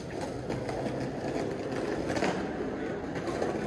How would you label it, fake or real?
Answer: real